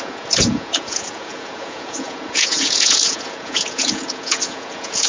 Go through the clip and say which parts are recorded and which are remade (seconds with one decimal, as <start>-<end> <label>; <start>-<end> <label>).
0.0-5.1 remade

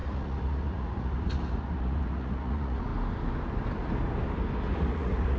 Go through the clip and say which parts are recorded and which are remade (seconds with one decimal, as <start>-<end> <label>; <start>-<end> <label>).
0.0-2.9 remade; 2.9-4.8 recorded; 4.8-5.4 remade

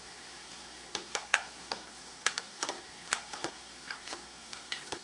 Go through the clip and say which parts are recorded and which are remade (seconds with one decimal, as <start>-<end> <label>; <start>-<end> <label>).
0.0-5.0 remade

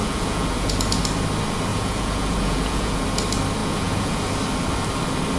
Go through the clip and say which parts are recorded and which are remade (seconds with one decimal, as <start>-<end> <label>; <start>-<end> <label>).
0.0-0.7 remade; 0.7-1.7 recorded; 1.7-3.0 remade; 3.0-3.6 recorded; 3.6-4.3 remade; 4.3-5.4 recorded

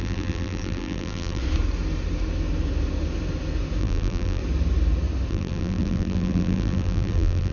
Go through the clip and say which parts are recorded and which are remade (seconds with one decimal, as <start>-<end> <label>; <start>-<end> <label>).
0.0-1.4 remade; 1.4-3.8 recorded; 3.8-4.4 remade; 4.4-5.3 recorded; 5.3-7.5 remade

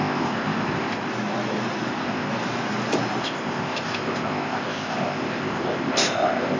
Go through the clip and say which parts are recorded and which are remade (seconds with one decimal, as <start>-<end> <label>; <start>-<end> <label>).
0.0-1.1 remade; 1.1-1.9 recorded; 1.9-2.3 remade; 2.3-3.2 recorded; 3.2-6.6 remade

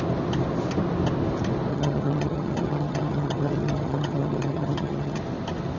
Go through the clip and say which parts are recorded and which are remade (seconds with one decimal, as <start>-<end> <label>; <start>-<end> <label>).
0.0-1.7 recorded; 1.7-5.2 remade; 5.2-5.8 recorded

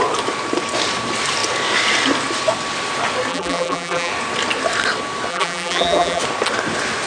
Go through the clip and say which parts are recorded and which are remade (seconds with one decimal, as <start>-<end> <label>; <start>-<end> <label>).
0.0-3.3 recorded; 3.3-4.1 remade; 4.1-5.3 recorded; 5.3-6.2 remade; 6.2-7.1 recorded